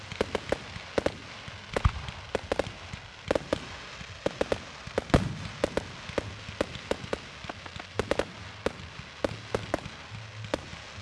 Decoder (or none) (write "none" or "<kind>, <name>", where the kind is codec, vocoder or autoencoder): none